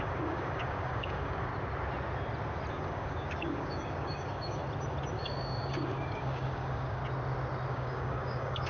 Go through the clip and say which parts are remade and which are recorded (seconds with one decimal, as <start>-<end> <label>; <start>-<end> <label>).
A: 0.0-1.5 remade; 1.5-2.7 recorded; 2.7-4.6 remade; 4.6-5.1 recorded; 5.1-7.0 remade; 7.0-7.7 recorded; 7.7-8.7 remade